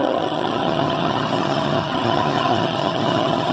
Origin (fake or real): fake